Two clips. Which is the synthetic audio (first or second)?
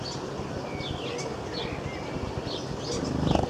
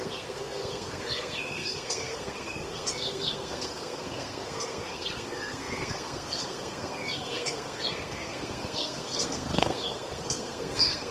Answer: second